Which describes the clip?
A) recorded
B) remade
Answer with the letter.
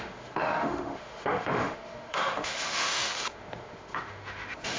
B